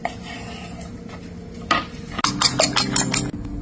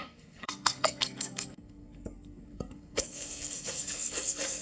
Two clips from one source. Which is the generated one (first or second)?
second